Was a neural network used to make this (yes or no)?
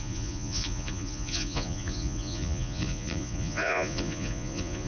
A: yes